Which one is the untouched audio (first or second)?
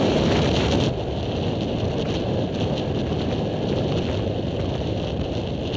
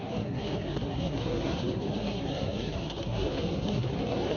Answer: first